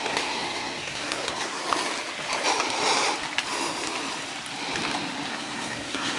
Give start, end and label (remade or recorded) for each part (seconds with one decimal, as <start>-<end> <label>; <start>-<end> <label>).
0.0-1.6 remade; 1.6-5.3 recorded; 5.3-6.2 remade